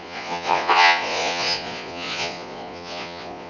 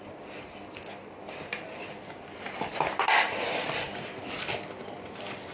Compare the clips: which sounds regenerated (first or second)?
first